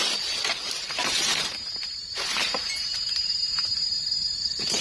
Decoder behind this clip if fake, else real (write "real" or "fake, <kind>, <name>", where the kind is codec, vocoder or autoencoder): fake, vocoder, BigVGAN v2